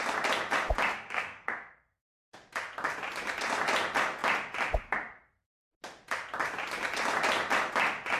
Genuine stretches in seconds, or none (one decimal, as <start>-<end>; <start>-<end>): 0.0-0.9; 2.4-8.2